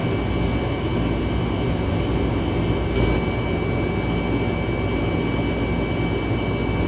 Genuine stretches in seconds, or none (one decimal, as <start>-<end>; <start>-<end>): 0.0-6.9

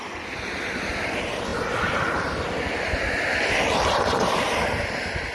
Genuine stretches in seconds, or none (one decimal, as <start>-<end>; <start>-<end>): 0.0-5.3

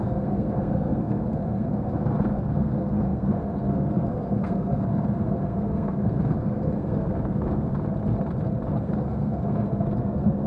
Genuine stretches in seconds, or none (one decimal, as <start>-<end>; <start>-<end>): 7.7-8.7

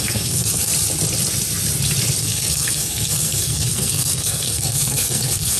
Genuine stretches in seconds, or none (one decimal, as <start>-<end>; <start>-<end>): 0.7-2.2

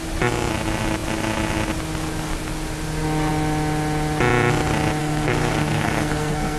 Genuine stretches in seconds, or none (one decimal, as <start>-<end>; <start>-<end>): 0.0-5.0

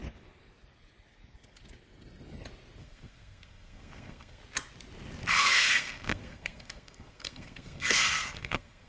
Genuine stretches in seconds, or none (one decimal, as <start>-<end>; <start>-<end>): 0.0-2.8; 4.4-5.3

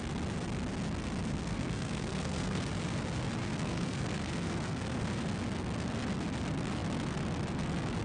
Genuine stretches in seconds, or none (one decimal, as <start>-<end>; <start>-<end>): 0.0-1.2; 2.6-3.4; 5.3-8.0